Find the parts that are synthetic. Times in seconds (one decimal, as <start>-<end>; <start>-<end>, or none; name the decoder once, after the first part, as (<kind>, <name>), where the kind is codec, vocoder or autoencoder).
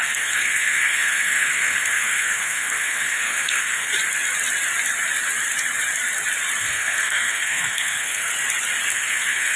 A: 0.0-3.9 (codec, SNAC); 6.6-8.3; 8.9-9.6